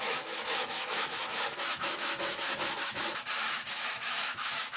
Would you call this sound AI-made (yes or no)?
yes